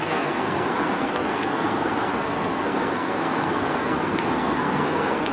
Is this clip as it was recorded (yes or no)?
no